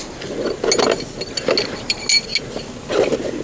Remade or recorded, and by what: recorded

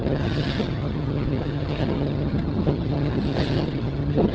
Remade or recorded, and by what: remade, vocoder, HiFi-GAN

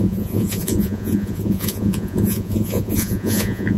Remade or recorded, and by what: remade, vocoder, Vocos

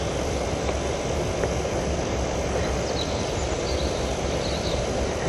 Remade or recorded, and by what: recorded